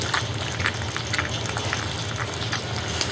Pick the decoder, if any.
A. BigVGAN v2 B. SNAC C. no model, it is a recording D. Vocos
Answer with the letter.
C